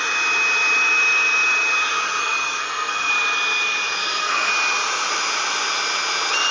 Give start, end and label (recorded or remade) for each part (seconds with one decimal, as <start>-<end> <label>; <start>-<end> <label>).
0.0-2.2 recorded; 2.2-3.1 remade; 3.1-4.0 recorded; 4.0-4.5 remade; 4.5-6.5 recorded